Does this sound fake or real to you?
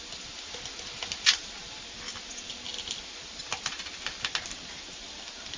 real